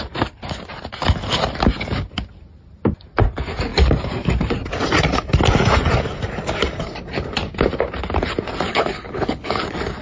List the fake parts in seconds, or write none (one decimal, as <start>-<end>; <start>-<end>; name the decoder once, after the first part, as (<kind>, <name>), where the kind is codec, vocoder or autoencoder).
8.7-9.6 (codec, HILCodec)